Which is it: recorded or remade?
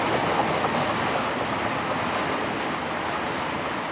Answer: recorded